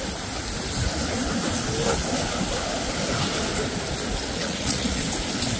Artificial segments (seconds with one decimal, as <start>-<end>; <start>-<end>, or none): 4.4-5.0